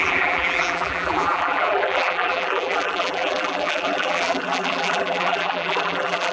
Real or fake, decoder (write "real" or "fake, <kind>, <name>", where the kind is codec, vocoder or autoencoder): fake, vocoder, BigVGAN v2